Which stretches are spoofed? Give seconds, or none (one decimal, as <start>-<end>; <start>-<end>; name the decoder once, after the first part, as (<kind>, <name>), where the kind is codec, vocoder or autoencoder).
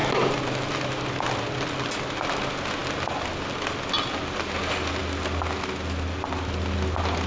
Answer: none